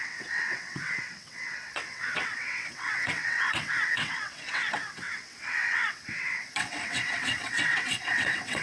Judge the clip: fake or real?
fake